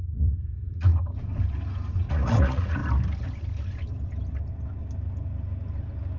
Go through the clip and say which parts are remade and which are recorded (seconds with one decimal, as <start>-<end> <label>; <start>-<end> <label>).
0.0-0.9 remade; 0.9-2.0 recorded; 2.0-2.8 remade; 2.8-6.2 recorded